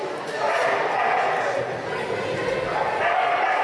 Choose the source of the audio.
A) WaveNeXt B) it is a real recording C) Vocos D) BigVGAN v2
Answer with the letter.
B